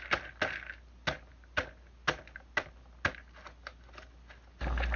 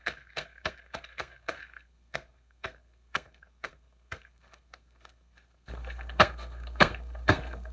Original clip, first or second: first